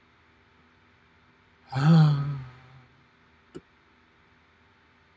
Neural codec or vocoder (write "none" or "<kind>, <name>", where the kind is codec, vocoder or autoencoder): none